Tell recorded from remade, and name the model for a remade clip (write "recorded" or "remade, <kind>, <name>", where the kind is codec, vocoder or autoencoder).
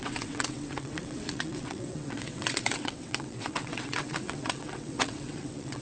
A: remade, vocoder, WaveNeXt